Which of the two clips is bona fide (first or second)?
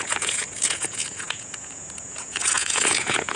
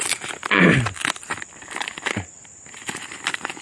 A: second